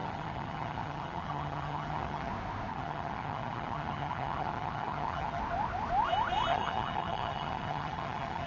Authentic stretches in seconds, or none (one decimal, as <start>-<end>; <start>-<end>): 2.3-2.7; 5.4-6.5